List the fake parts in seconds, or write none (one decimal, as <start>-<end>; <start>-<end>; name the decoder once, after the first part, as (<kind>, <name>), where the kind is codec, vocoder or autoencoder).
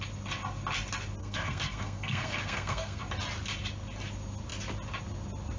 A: 1.2-3.0 (codec, SNAC)